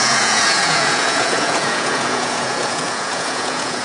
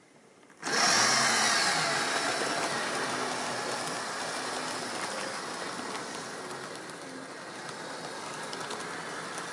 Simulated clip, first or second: first